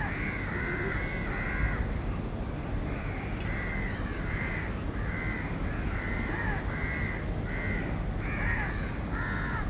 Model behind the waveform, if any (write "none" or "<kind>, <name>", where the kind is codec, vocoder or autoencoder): none